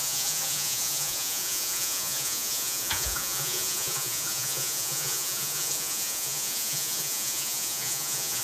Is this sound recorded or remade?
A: remade